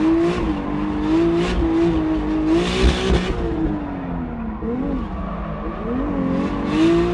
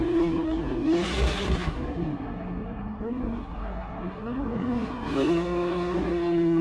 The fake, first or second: second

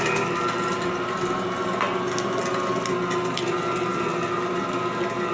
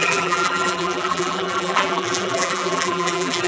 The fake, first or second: second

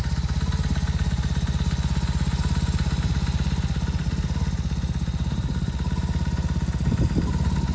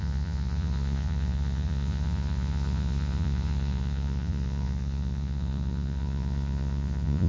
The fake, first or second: second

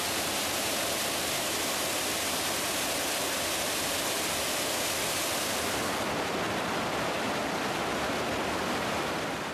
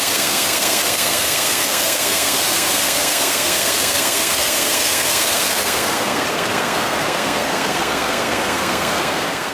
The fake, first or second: second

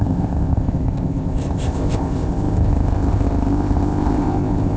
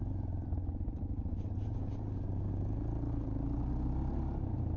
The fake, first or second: first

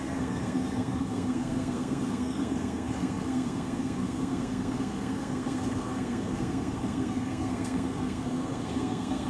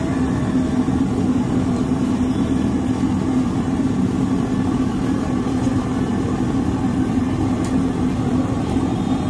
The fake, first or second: first